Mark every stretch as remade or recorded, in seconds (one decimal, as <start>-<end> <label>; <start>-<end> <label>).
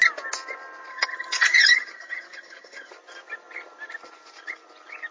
0.0-0.9 recorded; 0.9-2.9 remade; 2.9-5.1 recorded